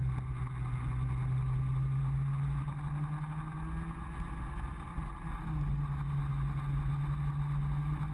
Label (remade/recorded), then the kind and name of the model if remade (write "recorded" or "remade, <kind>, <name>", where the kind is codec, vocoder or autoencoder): recorded